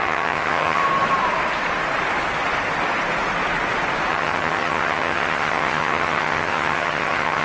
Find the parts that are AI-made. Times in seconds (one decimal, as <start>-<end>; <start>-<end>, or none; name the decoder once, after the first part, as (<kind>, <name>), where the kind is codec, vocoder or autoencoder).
0.0-0.8 (vocoder, HiFi-GAN); 4.1-7.4